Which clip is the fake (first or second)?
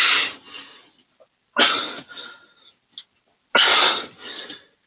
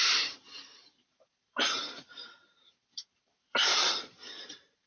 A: second